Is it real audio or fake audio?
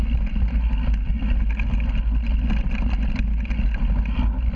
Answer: real